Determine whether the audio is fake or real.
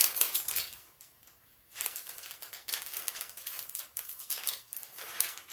fake